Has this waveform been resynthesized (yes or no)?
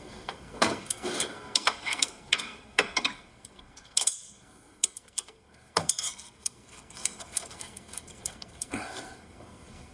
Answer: yes